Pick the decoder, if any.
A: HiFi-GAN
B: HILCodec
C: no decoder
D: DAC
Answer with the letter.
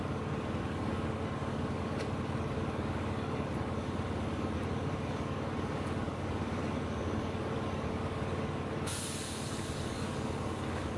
D